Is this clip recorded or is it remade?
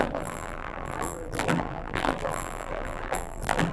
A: remade